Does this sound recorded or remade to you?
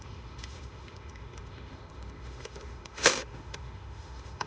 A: remade